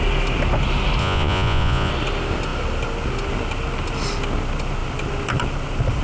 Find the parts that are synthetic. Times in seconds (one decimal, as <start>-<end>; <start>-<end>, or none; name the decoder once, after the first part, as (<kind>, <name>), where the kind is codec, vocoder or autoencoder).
1.0-1.9 (vocoder, Vocos)